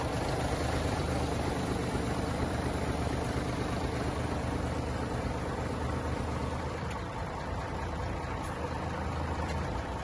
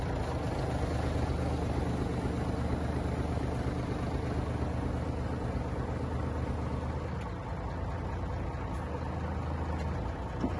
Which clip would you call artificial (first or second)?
first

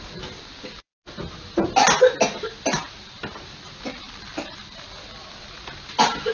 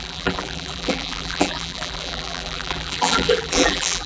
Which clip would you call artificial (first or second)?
second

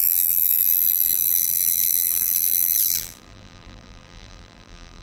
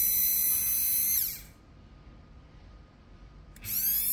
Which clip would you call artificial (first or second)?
first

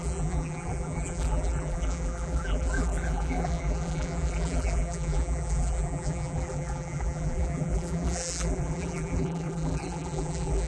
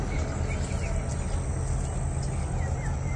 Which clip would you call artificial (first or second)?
first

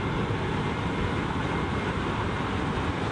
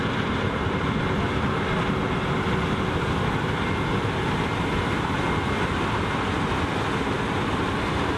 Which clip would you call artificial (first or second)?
first